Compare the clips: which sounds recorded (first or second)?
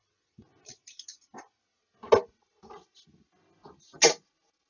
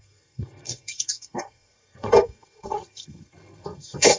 first